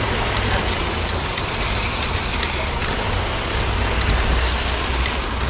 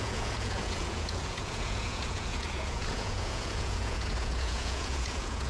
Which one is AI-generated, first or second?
second